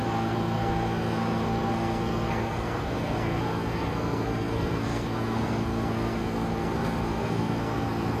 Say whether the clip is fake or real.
fake